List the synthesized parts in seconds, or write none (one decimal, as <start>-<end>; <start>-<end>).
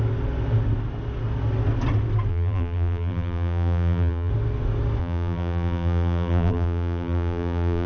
2.3-4.3; 5.0-7.9